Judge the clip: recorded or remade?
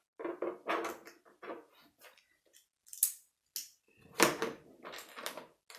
recorded